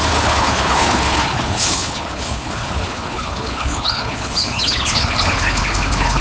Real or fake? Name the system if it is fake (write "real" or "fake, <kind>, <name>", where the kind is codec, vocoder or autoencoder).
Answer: fake, codec, HILCodec